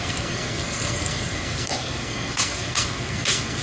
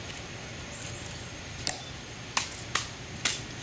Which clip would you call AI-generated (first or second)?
first